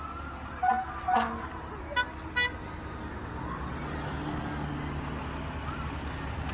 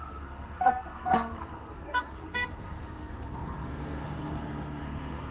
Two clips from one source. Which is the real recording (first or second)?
first